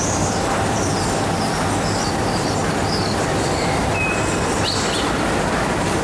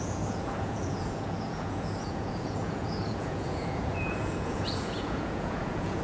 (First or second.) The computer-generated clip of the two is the second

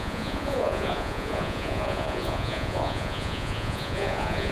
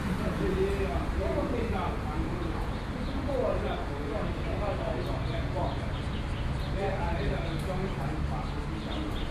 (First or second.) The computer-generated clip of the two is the first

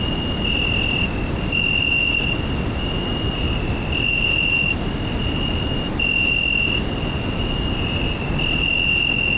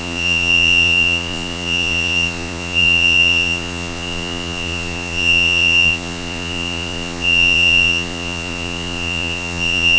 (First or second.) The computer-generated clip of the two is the second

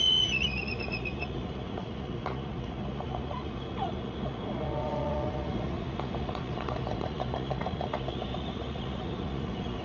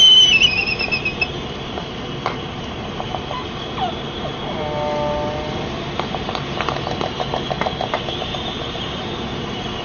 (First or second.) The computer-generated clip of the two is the first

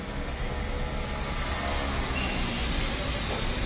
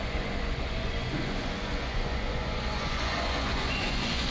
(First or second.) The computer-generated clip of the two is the second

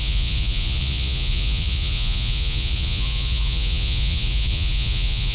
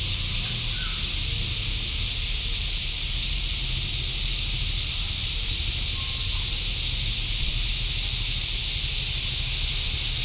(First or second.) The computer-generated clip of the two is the first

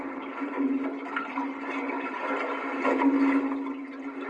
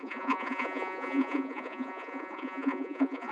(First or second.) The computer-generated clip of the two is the second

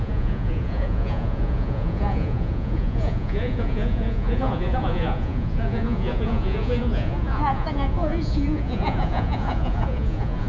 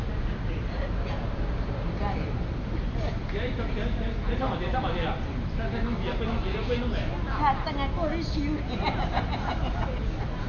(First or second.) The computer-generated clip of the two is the first